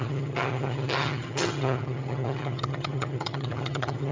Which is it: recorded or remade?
remade